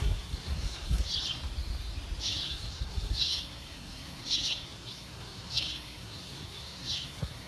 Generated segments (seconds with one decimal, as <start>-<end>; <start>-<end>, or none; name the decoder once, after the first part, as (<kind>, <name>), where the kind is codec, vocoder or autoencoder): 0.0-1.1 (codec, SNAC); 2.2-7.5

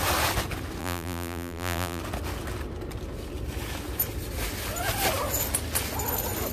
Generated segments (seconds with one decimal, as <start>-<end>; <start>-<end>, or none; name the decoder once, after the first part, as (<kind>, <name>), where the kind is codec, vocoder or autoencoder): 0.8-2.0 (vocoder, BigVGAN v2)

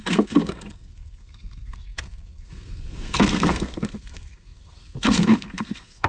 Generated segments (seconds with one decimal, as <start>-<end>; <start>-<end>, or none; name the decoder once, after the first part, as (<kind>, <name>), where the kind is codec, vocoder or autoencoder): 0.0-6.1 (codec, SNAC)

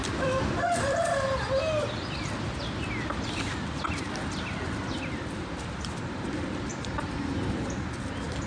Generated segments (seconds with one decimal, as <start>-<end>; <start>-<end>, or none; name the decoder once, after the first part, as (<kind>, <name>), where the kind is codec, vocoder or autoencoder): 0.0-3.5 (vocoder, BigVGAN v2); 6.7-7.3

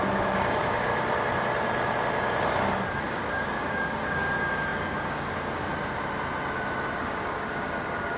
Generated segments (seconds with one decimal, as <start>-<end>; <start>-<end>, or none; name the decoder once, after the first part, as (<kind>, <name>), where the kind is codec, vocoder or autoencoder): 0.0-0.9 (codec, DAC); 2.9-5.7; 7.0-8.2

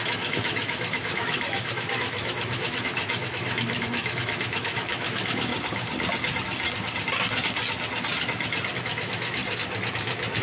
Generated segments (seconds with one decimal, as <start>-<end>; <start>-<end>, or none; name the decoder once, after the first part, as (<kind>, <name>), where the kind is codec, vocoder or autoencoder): 0.0-5.5 (autoencoder, DAC-VAE); 8.8-9.4

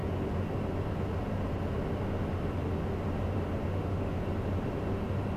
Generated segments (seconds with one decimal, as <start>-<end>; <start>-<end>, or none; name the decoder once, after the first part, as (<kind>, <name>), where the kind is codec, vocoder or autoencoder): 3.7-4.2 (autoencoder, DAC-VAE)